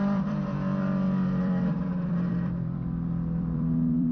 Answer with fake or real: fake